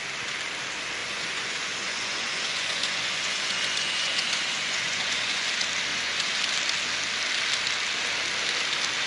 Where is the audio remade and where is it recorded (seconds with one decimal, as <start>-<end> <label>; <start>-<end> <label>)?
0.0-1.0 recorded; 1.0-5.5 remade; 5.5-5.9 recorded; 5.9-6.4 remade; 6.4-9.1 recorded

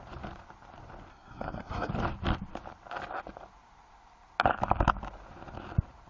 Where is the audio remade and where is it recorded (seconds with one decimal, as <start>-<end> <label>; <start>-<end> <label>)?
0.0-1.1 recorded; 1.1-1.9 remade; 1.9-6.1 recorded

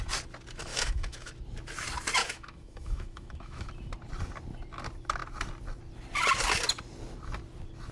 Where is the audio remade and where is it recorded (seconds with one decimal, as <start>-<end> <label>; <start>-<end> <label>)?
0.0-0.7 recorded; 0.7-1.3 remade; 1.3-2.2 recorded; 2.2-3.7 remade; 3.7-7.9 recorded

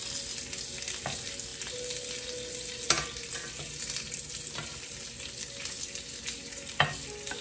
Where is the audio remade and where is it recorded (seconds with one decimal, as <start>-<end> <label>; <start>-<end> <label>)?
0.0-7.4 recorded

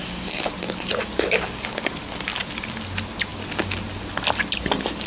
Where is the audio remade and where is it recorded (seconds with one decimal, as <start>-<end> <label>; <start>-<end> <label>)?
0.0-5.1 recorded

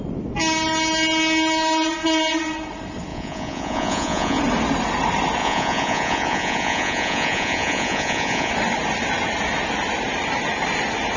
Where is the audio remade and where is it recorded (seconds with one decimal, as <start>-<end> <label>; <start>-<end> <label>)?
0.0-3.1 recorded; 3.1-4.4 remade; 4.4-5.4 recorded; 5.4-8.5 remade; 8.5-11.2 recorded